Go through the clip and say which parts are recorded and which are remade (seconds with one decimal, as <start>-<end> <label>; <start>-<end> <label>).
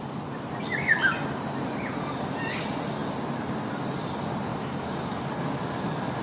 0.0-4.5 recorded; 4.5-5.3 remade; 5.3-6.2 recorded